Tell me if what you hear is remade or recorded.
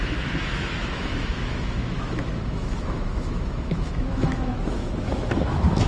remade